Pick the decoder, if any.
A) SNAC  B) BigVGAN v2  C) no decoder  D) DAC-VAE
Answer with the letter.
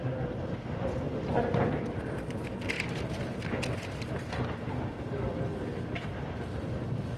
C